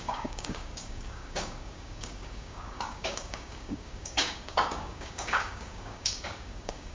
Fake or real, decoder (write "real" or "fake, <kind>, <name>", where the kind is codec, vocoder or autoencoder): fake, codec, DAC